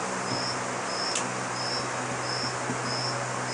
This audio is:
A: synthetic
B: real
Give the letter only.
B